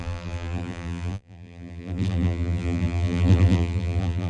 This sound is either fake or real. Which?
fake